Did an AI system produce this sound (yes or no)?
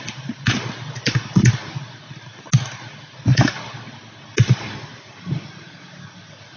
no